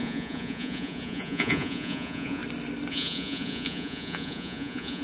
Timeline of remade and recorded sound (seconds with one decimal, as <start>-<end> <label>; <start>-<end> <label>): 0.0-2.4 remade; 2.4-2.9 recorded; 2.9-5.0 remade